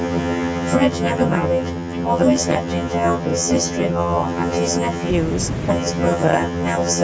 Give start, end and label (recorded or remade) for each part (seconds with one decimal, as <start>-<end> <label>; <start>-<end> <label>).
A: 0.0-5.1 remade; 5.1-5.7 recorded; 5.7-7.0 remade